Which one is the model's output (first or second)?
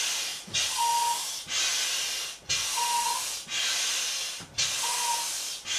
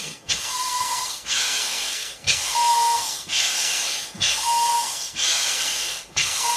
second